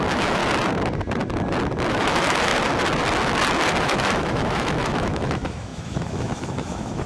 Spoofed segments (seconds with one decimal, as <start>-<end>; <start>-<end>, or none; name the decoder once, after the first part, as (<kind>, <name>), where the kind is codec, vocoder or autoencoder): 0.0-0.4 (autoencoder, DAC-VAE); 1.9-2.5; 3.8-7.1